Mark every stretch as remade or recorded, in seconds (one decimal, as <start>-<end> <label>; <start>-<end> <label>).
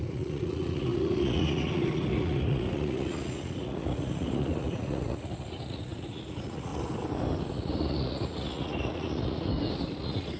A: 0.0-6.7 remade; 6.7-7.5 recorded; 7.5-9.5 remade; 9.5-10.0 recorded; 10.0-10.4 remade